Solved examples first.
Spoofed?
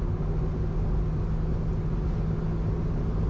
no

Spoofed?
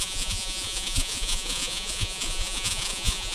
yes